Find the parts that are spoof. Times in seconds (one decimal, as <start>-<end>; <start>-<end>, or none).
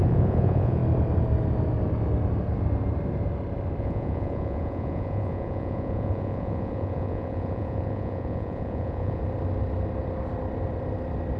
0.0-0.8; 3.8-9.2